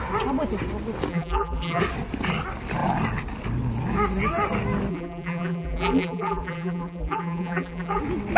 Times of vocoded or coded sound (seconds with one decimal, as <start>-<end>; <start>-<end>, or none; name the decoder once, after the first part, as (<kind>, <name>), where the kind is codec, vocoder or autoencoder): 1.1-1.8 (vocoder, BigVGAN v2); 4.9-8.0